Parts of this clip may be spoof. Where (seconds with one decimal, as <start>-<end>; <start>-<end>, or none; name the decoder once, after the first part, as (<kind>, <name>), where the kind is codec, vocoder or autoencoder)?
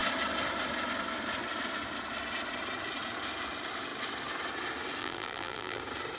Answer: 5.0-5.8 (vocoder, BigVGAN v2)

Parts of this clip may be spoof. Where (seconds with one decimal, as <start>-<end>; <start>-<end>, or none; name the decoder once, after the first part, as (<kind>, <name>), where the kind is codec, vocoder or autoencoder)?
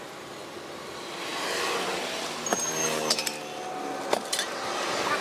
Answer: none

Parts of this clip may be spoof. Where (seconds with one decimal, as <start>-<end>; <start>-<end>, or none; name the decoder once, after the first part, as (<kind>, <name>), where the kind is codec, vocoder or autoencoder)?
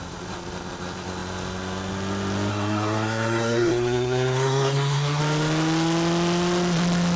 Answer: 2.5-5.2 (codec, SNAC)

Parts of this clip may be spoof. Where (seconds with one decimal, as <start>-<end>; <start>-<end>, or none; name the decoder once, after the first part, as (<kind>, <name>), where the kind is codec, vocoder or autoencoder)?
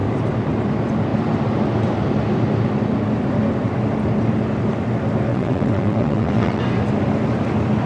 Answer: 5.3-6.6 (vocoder, WaveNeXt)